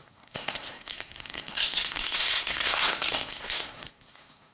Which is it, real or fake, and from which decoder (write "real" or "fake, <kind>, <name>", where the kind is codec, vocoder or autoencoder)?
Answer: fake, codec, SNAC